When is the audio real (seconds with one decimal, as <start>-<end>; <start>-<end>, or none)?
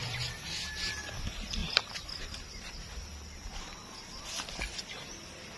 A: 0.5-5.6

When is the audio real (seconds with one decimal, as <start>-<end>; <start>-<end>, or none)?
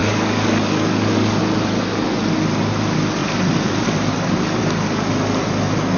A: 1.4-6.0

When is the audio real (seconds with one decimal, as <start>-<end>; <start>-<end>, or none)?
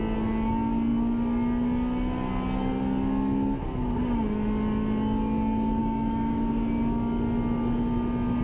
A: 0.0-5.8; 6.5-8.4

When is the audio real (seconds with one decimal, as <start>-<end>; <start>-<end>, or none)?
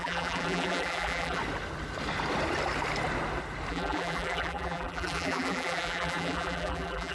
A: 1.4-3.7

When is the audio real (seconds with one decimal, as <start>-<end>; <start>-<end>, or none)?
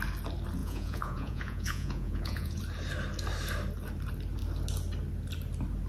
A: 0.0-0.6; 2.6-5.9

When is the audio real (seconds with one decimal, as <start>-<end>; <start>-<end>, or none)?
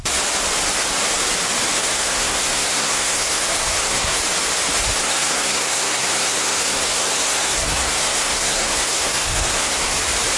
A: 0.0-1.8; 4.2-5.0; 10.0-10.4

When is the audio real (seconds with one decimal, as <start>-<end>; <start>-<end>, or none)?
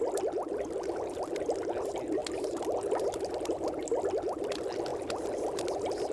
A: 0.0-6.1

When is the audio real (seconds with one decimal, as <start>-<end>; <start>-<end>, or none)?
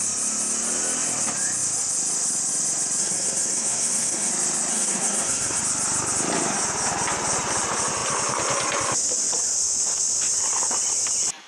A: 0.0-3.0; 4.3-4.7; 5.6-11.5